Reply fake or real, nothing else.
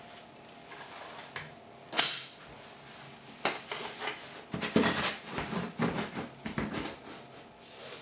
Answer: real